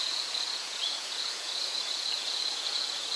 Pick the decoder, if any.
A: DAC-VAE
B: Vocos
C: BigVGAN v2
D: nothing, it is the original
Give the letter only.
B